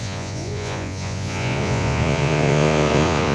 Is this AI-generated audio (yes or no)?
yes